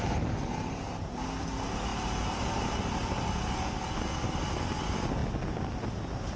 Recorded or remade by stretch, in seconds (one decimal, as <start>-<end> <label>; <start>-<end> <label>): 0.0-6.4 recorded